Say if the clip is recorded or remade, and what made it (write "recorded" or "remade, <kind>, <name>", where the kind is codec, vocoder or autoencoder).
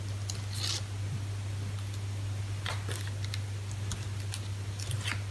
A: recorded